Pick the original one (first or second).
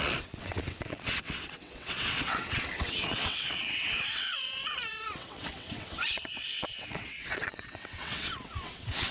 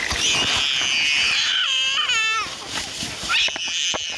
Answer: second